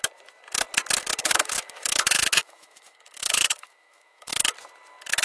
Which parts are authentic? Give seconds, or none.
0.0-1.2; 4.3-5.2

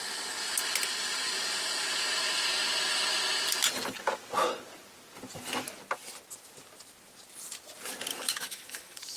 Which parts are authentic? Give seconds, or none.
0.0-8.1